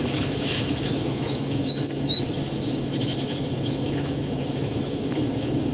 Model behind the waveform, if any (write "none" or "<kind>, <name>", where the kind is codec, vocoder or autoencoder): autoencoder, DAC-VAE